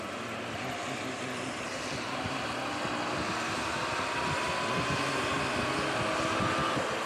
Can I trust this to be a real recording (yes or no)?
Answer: yes